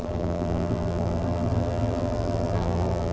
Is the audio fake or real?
fake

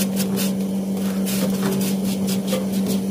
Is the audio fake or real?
real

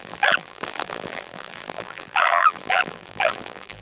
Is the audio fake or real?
fake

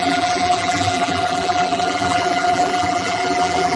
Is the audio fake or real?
fake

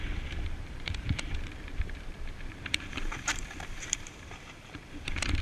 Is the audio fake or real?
fake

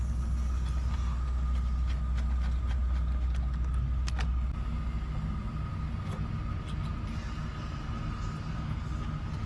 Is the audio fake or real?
real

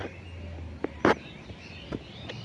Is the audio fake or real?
real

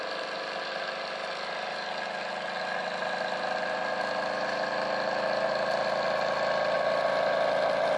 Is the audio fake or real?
real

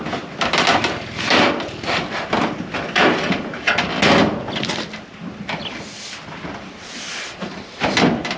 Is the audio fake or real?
real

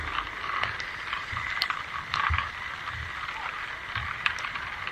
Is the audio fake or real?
real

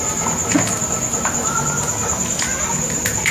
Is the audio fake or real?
real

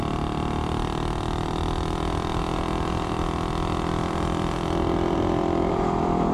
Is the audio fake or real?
fake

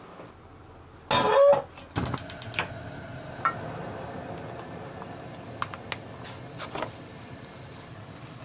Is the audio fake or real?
real